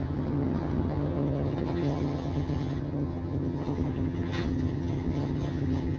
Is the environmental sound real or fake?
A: fake